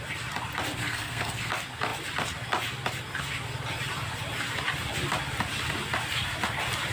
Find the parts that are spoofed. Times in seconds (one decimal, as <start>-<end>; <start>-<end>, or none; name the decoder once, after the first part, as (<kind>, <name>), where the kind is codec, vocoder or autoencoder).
0.8-1.5 (codec, SNAC)